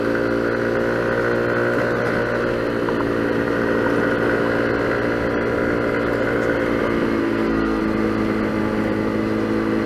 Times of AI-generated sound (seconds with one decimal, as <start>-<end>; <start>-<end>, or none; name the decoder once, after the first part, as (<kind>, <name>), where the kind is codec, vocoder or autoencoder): 7.2-7.8 (codec, SNAC)